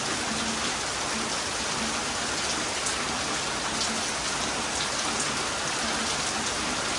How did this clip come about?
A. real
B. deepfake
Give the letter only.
A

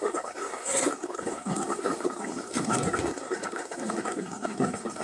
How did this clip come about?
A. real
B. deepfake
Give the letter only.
B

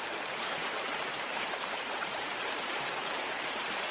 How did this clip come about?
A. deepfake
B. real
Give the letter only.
A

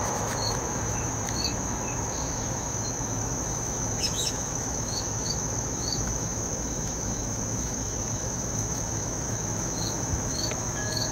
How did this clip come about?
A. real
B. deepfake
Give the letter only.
B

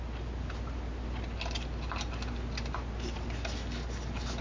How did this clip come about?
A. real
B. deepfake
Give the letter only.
A